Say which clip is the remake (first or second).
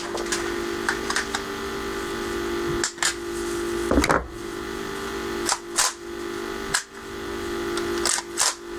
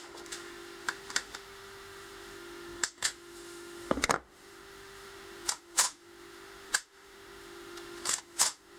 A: second